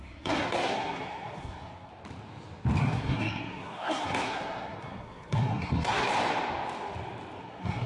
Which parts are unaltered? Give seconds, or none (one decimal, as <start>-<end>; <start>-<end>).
1.9-2.8; 6.1-7.4